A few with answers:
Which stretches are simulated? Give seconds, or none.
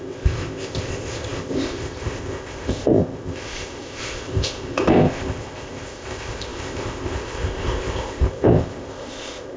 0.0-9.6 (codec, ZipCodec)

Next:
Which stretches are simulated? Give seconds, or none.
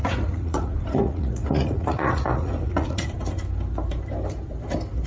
0.0-3.1 (vocoder, Vocos)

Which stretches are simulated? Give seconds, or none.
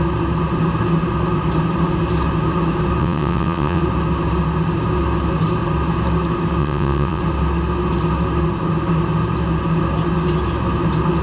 3.0-3.8 (vocoder, WaveNeXt); 6.6-7.2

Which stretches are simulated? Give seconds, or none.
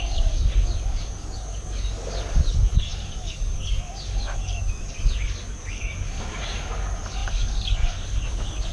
0.0-8.7 (codec, DAC)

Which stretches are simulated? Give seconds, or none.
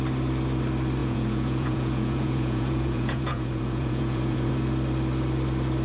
1.0-4.5 (vocoder, Vocos)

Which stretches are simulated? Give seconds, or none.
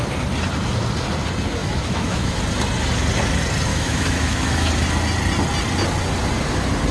1.6-2.4 (autoencoder, DAC-VAE); 3.7-4.7